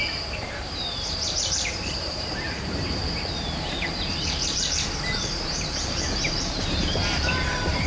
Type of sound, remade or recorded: remade